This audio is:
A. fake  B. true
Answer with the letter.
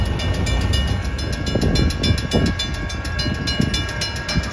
B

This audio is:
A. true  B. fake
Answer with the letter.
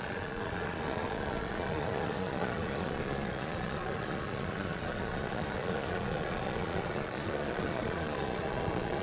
B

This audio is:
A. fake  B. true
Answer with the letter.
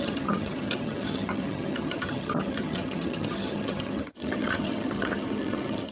A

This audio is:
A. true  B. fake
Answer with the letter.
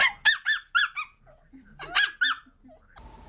A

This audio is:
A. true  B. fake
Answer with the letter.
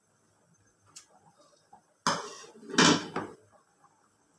A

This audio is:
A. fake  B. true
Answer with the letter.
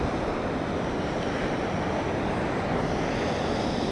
B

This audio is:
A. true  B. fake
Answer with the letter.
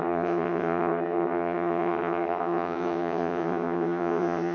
B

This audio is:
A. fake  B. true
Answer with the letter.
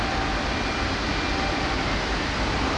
B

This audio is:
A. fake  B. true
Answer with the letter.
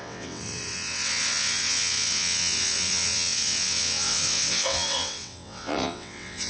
A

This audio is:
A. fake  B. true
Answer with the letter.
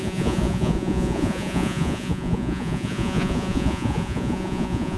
A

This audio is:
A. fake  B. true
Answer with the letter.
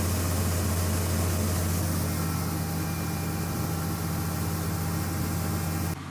B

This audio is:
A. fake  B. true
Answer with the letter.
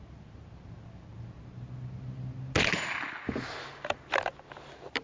B